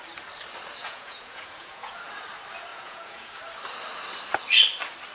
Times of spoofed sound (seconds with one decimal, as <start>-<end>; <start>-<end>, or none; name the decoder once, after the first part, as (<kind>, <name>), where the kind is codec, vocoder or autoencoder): 0.8-2.0 (vocoder, Vocos); 2.7-3.3